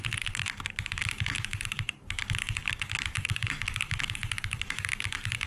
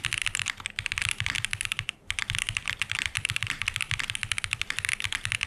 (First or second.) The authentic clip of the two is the second